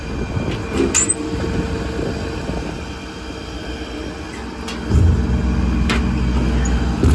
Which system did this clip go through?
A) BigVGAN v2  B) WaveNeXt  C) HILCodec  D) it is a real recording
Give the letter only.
D